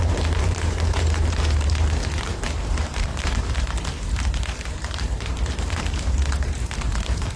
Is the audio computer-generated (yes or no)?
yes